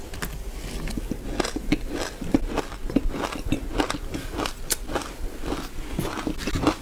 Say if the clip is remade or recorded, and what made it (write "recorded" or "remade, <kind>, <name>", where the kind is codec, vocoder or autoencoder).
recorded